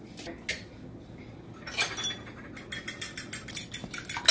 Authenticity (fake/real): real